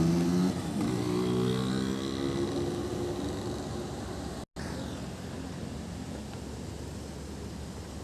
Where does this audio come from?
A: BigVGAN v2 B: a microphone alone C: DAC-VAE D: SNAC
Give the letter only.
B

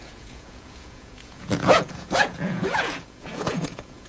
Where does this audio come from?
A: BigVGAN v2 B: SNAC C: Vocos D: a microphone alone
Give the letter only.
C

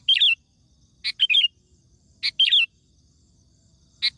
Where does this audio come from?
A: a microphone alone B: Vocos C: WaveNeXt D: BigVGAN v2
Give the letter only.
A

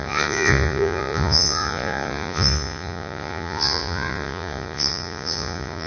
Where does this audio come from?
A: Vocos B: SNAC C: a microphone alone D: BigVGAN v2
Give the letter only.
A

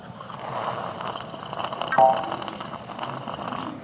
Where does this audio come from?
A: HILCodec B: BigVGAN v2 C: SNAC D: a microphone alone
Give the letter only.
D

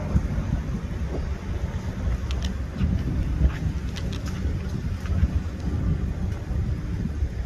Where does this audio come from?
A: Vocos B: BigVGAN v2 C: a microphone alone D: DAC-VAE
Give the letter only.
C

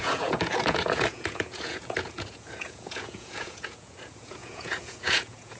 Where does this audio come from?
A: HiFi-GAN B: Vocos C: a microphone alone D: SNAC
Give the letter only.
B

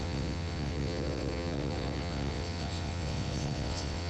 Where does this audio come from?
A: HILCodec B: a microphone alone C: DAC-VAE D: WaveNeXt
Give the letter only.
D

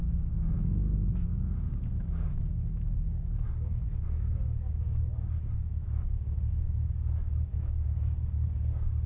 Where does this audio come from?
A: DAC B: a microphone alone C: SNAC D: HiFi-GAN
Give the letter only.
A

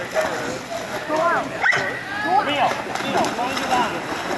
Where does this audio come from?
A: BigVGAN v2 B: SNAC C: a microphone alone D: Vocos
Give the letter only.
C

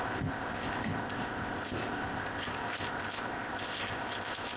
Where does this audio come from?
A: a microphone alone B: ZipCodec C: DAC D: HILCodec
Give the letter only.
B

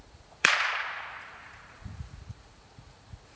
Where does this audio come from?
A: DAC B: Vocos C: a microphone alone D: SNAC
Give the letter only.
B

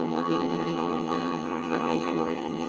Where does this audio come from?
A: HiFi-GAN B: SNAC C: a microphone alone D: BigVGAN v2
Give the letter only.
A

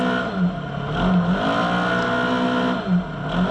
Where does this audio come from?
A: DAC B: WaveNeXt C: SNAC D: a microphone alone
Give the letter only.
D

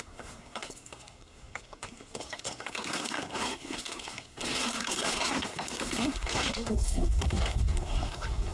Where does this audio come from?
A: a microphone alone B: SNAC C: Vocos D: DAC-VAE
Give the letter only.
B